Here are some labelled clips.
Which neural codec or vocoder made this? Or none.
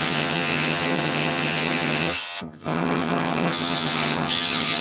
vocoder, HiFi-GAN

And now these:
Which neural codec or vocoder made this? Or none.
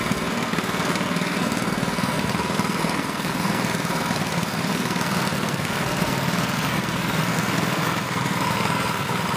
codec, SNAC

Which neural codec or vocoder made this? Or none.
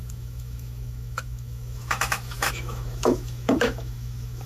autoencoder, DAC-VAE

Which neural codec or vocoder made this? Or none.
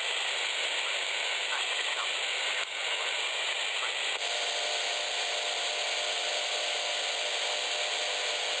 none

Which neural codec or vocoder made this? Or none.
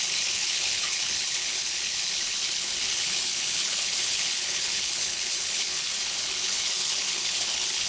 codec, HILCodec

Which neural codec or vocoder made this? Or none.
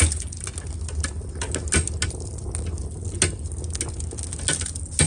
none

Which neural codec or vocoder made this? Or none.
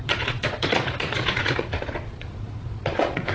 vocoder, Vocos